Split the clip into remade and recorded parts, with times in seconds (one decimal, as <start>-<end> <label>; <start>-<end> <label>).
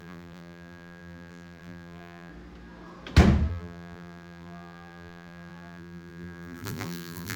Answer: 0.0-2.3 remade; 2.3-3.5 recorded; 3.5-7.4 remade